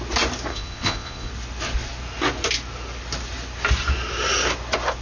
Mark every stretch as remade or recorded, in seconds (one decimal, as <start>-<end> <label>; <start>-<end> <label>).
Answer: 0.0-0.5 recorded; 0.5-1.3 remade; 1.3-5.0 recorded